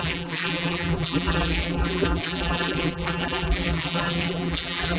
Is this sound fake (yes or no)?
yes